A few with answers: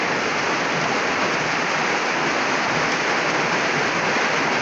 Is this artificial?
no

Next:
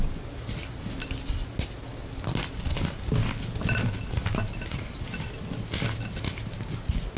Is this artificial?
no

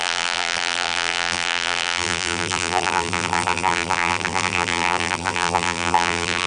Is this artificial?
yes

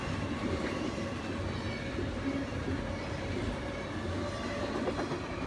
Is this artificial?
no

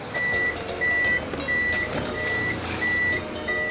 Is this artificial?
no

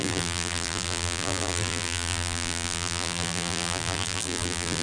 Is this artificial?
yes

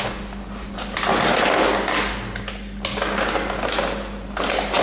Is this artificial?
no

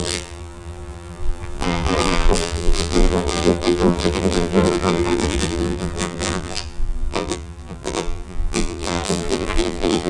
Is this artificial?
yes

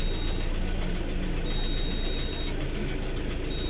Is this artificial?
no